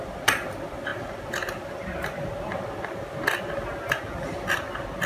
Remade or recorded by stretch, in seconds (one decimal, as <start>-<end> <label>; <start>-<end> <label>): 0.0-5.1 recorded